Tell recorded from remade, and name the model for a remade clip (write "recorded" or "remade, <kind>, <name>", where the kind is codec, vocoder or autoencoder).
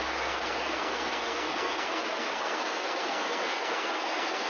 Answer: remade, codec, SNAC